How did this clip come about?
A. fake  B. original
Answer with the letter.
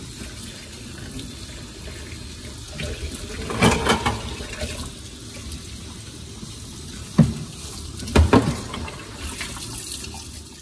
B